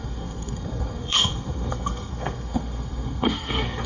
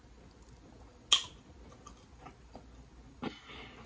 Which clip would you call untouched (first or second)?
second